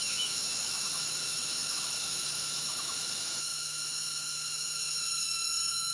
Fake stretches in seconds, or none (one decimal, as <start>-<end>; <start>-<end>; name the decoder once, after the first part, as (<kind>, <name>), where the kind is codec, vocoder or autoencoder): 0.0-5.9 (autoencoder, DAC-VAE)